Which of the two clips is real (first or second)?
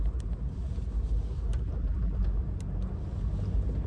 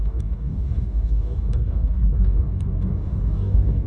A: first